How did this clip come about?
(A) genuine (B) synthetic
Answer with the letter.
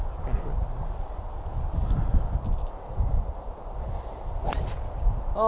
A